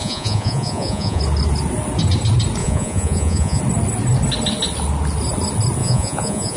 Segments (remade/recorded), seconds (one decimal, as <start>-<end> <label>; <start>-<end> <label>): 0.0-1.2 remade; 1.2-2.6 recorded; 2.6-3.6 remade; 3.6-5.8 recorded; 5.8-6.6 remade